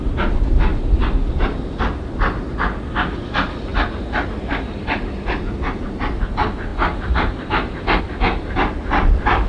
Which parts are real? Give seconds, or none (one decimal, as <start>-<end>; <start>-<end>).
0.0-9.5